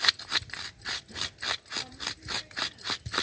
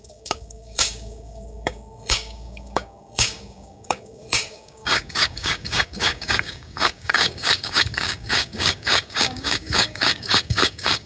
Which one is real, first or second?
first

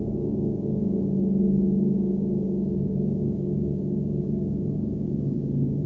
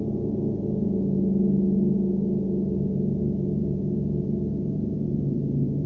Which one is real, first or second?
second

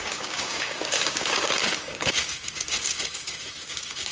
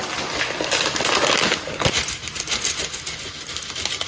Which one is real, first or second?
second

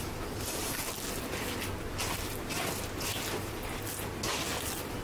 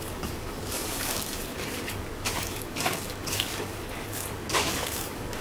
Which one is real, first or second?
first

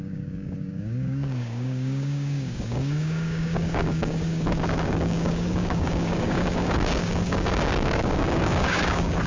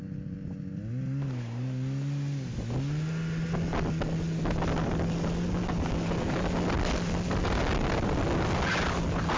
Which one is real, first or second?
second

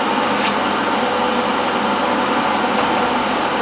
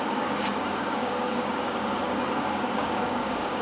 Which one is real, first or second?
first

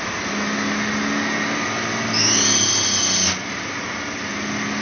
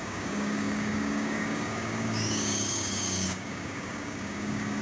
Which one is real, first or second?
first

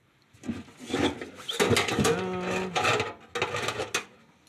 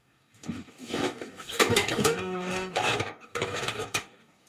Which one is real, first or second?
first